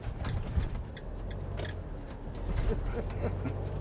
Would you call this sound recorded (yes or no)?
yes